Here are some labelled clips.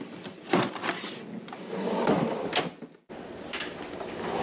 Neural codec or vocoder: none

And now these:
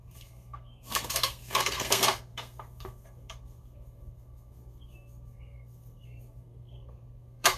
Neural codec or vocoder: codec, SNAC